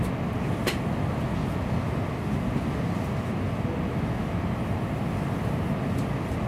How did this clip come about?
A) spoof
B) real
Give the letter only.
B